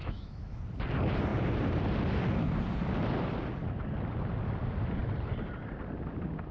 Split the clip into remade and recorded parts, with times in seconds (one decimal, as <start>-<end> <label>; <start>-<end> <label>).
0.0-0.6 remade; 0.6-6.5 recorded